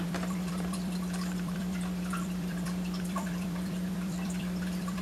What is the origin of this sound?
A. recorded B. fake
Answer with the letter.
B